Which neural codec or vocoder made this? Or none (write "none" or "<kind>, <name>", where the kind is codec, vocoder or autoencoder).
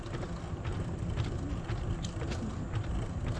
none